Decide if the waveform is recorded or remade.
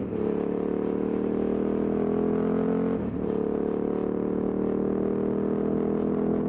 recorded